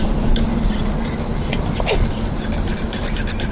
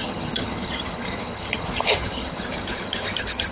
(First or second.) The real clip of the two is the first